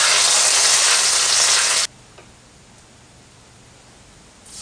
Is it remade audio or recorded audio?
recorded